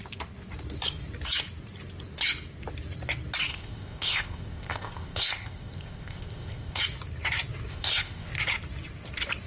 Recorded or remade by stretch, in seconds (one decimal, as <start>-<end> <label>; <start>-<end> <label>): 0.0-3.5 recorded; 3.5-6.8 remade; 6.8-7.7 recorded; 7.7-8.3 remade; 8.3-9.5 recorded